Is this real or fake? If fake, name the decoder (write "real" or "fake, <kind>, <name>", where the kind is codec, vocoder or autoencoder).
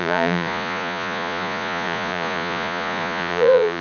fake, vocoder, Vocos